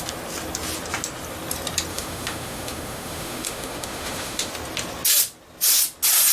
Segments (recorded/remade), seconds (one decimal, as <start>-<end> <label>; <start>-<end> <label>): 0.0-1.9 recorded; 1.9-4.5 remade; 4.5-6.3 recorded